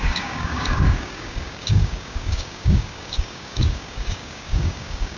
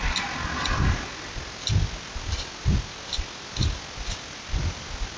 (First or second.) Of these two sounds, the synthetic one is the first